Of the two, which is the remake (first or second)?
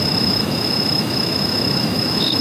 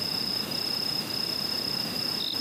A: first